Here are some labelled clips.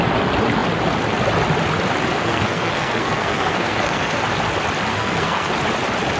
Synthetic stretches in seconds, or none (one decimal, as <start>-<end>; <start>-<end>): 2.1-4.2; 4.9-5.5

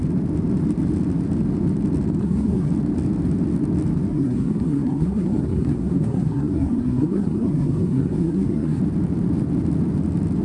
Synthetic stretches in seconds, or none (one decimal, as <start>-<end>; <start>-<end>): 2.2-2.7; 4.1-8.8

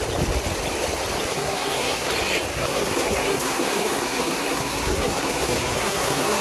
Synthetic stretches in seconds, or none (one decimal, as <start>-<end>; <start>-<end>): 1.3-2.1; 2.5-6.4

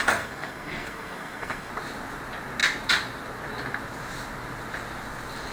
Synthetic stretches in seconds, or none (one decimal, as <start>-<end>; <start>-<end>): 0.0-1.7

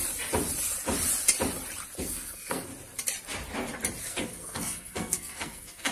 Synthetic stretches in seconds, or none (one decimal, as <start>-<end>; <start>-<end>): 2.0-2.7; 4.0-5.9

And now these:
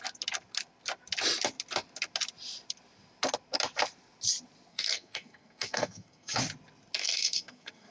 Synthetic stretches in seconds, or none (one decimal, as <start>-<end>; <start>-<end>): 4.7-6.4; 7.0-7.9

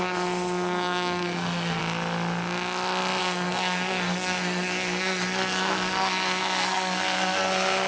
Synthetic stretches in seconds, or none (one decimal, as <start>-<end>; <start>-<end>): 0.0-1.8; 3.2-7.9